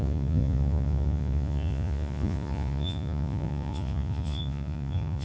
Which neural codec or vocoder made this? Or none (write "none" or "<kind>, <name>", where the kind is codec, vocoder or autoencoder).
vocoder, Vocos